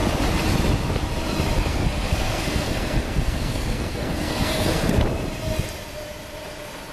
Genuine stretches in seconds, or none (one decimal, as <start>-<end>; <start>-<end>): 0.0-1.7; 5.0-6.9